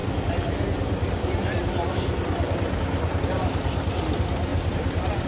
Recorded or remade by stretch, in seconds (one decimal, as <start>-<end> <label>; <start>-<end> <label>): 0.0-4.5 recorded; 4.5-5.3 remade